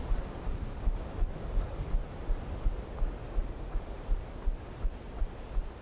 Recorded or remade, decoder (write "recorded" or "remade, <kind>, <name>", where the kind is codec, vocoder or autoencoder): recorded